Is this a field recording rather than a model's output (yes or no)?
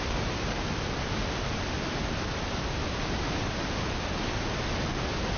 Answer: yes